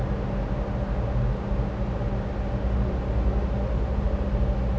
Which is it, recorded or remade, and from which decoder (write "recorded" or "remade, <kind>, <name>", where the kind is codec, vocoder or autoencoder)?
recorded